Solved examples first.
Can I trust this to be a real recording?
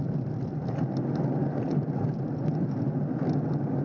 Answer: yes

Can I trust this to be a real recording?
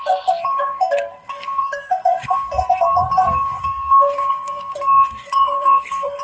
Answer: no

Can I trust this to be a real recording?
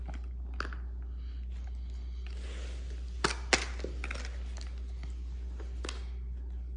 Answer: yes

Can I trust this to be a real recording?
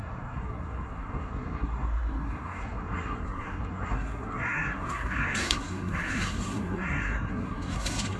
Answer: no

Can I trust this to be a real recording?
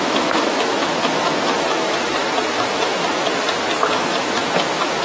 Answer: no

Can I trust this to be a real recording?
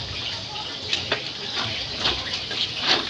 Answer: yes